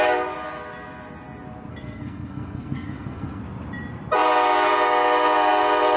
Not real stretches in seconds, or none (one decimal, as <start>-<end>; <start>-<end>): 1.7-3.4

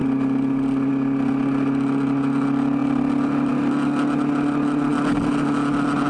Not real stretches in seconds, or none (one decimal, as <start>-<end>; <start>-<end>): none

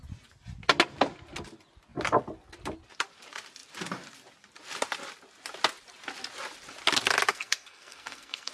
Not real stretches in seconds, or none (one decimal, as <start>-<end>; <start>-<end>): 7.3-8.5

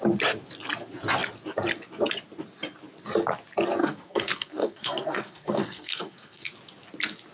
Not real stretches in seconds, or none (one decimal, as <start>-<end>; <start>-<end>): 3.8-6.5

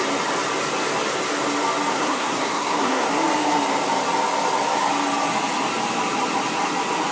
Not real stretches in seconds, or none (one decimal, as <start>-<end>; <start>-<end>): 1.9-3.1

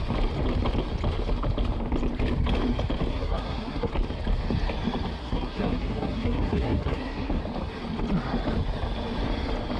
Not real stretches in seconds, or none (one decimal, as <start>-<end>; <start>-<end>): 3.1-3.9; 5.2-7.4